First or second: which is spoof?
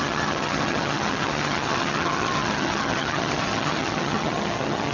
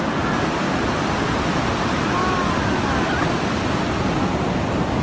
first